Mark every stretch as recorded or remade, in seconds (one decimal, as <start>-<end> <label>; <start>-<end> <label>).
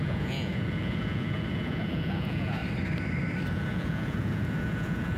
0.0-2.6 remade; 2.6-3.5 recorded; 3.5-5.2 remade